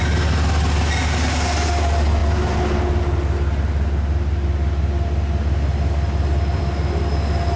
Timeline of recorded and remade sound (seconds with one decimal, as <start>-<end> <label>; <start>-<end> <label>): 0.0-7.6 recorded